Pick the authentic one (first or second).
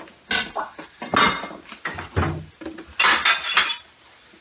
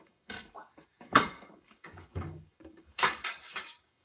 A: first